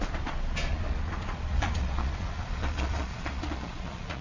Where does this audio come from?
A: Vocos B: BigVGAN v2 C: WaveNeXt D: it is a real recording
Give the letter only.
A